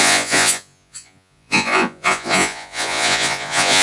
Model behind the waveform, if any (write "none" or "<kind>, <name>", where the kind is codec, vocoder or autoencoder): vocoder, Vocos